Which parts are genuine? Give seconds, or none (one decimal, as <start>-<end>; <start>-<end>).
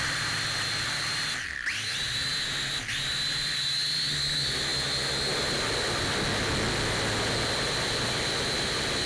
0.0-9.1